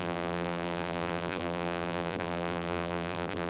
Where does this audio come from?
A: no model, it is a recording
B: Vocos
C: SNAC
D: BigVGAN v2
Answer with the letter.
D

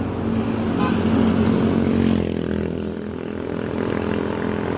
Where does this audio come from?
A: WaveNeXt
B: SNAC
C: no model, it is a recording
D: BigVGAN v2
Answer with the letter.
C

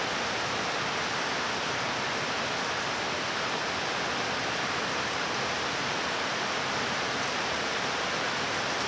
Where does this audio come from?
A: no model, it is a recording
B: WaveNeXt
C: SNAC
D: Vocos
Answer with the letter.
A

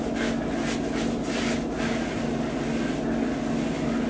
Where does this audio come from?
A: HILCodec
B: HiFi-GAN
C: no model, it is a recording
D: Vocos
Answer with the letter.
C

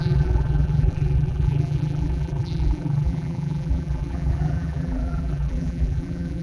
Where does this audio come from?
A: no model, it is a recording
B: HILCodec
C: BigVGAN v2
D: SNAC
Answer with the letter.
C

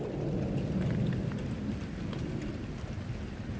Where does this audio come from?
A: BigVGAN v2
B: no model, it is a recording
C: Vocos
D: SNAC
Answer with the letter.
B